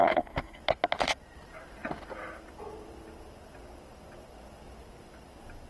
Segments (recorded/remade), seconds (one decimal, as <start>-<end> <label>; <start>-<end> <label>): 0.0-0.6 remade; 0.6-5.7 recorded